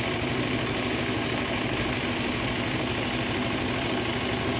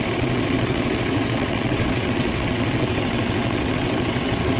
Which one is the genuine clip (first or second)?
first